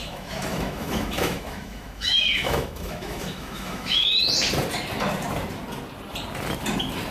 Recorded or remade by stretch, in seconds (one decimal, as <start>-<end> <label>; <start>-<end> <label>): 0.0-4.2 remade; 4.2-7.1 recorded